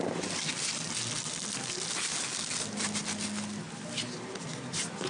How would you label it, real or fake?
real